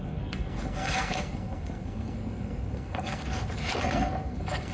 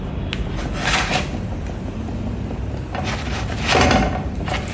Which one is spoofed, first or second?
first